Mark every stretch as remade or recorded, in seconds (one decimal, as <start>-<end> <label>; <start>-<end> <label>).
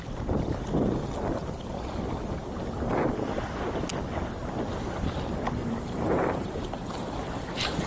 0.0-5.6 recorded; 5.6-7.9 remade